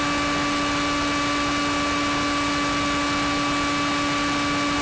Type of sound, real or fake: real